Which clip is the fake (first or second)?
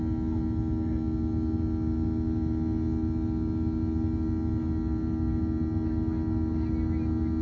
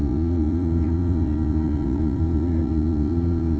second